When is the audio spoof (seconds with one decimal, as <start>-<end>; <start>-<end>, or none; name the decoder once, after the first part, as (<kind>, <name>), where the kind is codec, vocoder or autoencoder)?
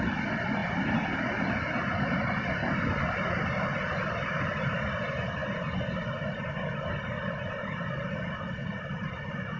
none